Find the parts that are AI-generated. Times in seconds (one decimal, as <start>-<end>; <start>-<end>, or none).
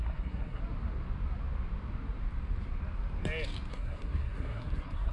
0.0-0.6; 3.7-5.1